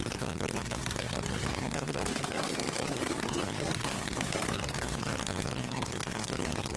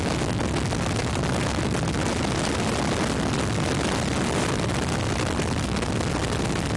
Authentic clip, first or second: second